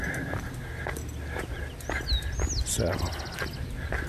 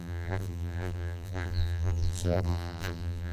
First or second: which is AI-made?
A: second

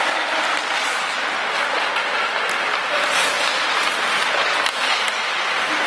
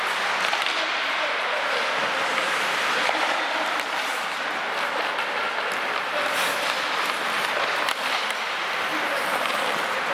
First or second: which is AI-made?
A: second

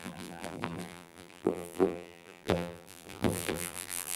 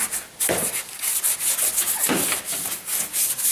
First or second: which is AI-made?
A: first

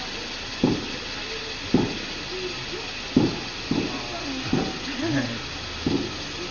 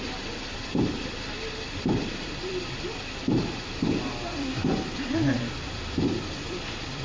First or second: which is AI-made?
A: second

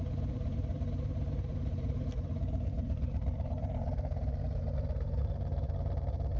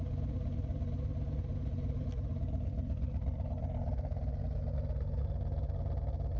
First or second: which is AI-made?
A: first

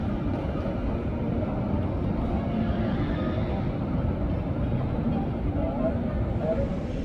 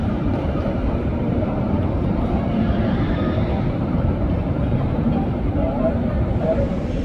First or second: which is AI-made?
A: second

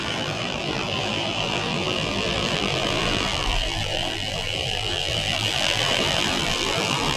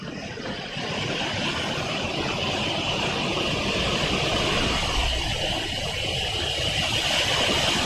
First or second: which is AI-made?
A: first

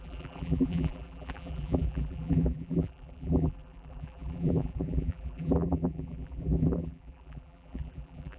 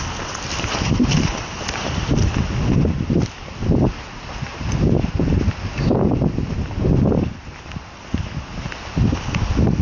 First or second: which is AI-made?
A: first